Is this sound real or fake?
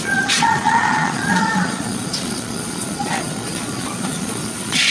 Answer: fake